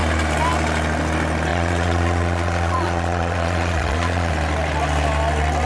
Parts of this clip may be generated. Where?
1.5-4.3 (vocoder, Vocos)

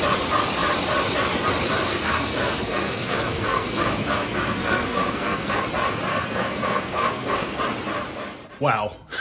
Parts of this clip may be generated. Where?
1.9-5.6 (codec, SNAC); 6.1-7.6